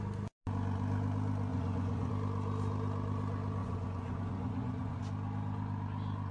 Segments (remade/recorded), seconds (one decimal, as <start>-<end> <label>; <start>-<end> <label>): 0.0-1.5 recorded; 1.5-2.1 remade; 2.1-3.6 recorded; 3.6-5.0 remade; 5.0-6.3 recorded